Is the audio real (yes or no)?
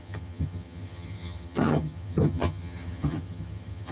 no